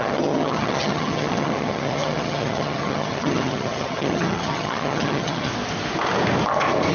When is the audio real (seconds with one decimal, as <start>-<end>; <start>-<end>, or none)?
5.5-6.9